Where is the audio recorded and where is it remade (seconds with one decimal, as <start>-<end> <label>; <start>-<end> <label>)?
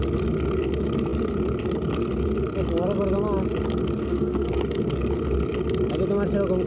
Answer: 0.0-4.1 recorded; 4.1-4.6 remade; 4.6-6.7 recorded